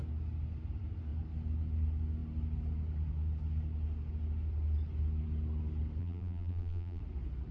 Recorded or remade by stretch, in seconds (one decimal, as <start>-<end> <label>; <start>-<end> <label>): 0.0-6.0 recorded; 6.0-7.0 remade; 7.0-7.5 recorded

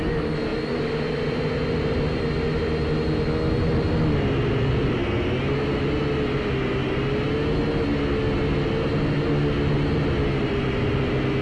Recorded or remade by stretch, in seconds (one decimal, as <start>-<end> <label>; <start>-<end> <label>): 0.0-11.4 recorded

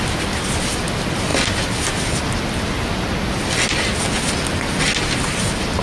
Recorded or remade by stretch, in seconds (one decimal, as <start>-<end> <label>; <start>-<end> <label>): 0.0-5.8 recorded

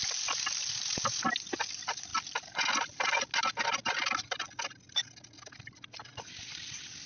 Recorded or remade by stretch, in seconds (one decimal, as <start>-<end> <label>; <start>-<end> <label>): 0.0-7.1 recorded

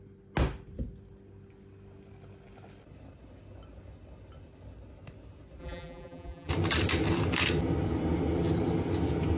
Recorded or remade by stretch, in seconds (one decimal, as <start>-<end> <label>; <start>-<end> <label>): 0.0-5.6 recorded; 5.6-6.5 remade; 6.5-9.4 recorded